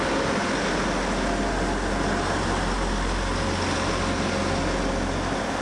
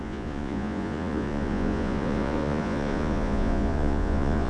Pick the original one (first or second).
first